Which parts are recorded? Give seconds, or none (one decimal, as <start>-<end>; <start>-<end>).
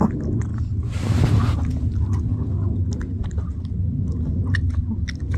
0.0-5.4